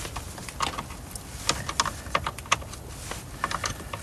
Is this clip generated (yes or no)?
no